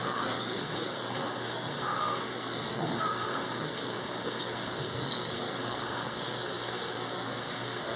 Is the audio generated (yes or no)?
yes